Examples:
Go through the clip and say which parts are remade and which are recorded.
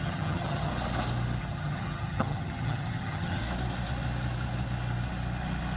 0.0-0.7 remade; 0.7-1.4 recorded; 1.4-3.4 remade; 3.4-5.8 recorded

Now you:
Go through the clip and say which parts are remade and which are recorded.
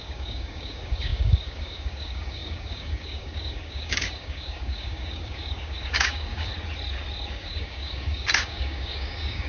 0.0-6.5 remade; 6.5-7.3 recorded; 7.3-9.5 remade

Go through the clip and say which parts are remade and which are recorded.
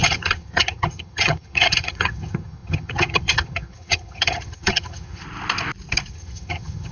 0.0-5.2 remade; 5.2-6.1 recorded; 6.1-6.9 remade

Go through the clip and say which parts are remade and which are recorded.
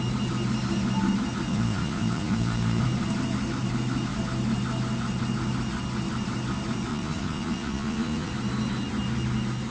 0.0-1.5 recorded; 1.5-2.8 remade; 2.8-6.9 recorded; 6.9-8.3 remade; 8.3-9.7 recorded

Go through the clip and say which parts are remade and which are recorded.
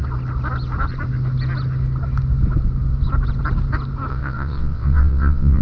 0.0-4.1 recorded; 4.1-5.6 remade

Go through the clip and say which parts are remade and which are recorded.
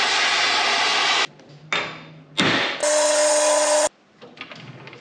0.0-5.0 recorded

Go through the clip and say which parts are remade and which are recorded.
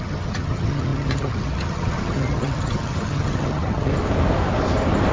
0.0-3.9 remade; 3.9-5.1 recorded